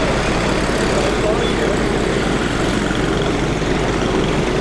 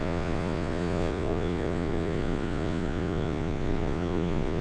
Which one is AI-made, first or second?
second